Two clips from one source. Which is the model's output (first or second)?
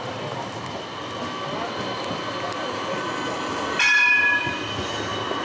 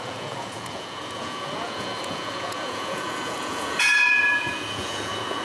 second